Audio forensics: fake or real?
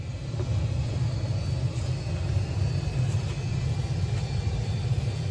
real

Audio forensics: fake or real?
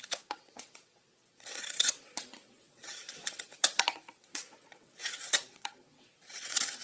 fake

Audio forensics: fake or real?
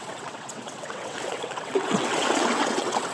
fake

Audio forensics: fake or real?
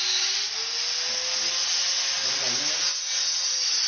real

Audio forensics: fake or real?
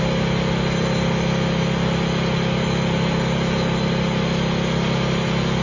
real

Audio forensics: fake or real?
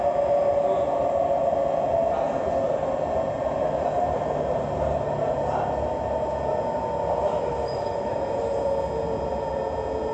real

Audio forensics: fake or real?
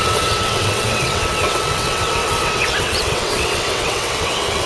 fake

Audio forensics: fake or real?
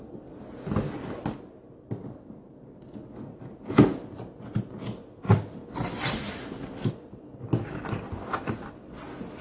real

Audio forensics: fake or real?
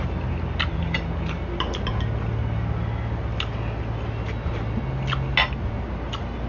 real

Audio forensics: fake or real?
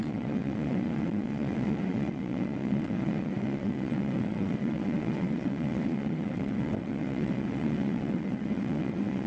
fake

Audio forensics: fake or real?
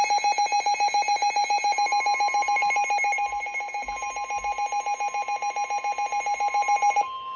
real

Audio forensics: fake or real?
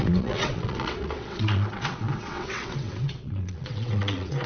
fake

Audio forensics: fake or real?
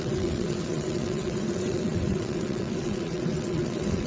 fake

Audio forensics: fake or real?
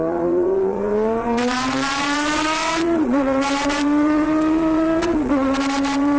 fake